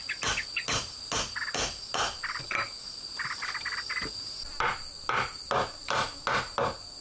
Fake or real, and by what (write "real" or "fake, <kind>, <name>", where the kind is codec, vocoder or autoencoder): real